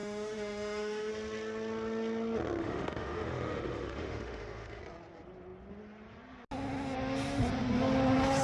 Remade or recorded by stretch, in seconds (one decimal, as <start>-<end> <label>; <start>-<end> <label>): 0.0-1.1 remade; 1.1-2.6 recorded; 2.6-4.8 remade; 4.8-8.4 recorded